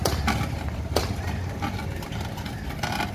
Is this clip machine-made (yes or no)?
no